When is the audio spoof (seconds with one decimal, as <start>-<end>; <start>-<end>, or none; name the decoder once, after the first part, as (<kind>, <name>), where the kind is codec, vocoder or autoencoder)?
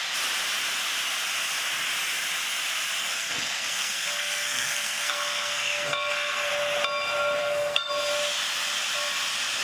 3.0-6.5 (codec, SNAC); 7.4-7.9